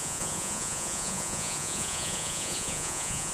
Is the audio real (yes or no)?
no